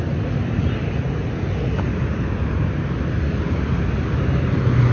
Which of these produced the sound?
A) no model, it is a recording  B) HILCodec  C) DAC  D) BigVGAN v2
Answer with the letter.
A